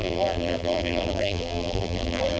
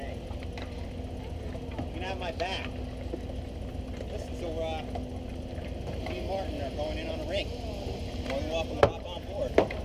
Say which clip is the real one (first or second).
second